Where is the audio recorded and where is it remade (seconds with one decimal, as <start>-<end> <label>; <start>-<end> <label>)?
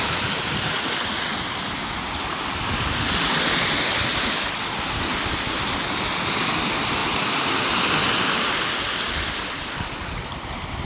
0.0-10.8 recorded